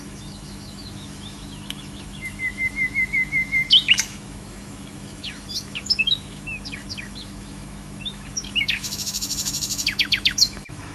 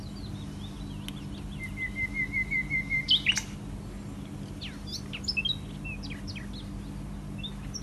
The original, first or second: second